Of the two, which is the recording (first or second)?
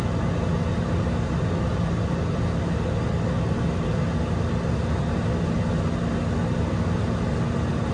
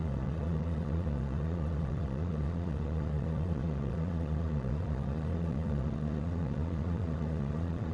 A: first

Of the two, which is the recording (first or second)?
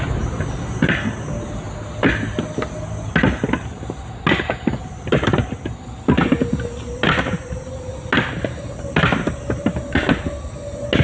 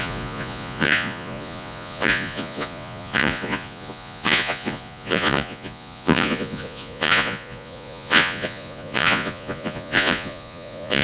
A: first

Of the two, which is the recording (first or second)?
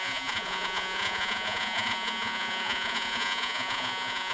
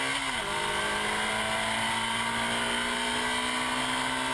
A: second